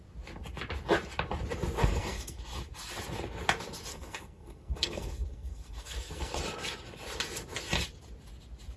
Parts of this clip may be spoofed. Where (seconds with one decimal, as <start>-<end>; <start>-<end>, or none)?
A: 1.8-2.4; 3.9-6.4